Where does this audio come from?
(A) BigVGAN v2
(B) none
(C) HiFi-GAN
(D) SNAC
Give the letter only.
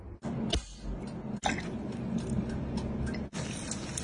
B